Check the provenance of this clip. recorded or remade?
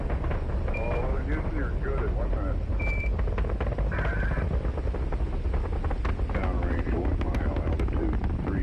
recorded